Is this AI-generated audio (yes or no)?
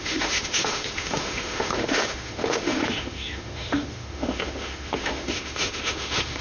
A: yes